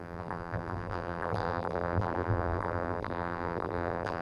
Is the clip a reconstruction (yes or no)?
yes